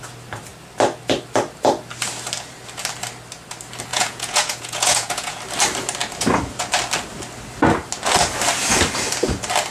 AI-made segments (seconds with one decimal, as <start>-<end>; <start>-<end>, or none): 3.9-5.4